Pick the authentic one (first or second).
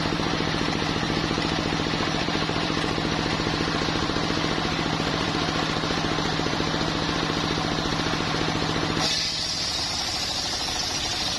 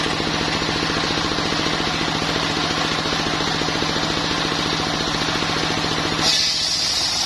second